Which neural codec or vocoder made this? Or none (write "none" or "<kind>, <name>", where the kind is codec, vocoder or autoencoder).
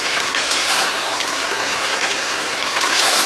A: codec, SNAC